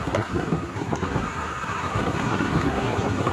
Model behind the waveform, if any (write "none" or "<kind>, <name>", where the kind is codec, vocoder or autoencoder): codec, SNAC